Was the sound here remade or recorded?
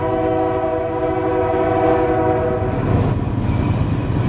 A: recorded